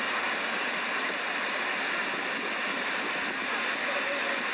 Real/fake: real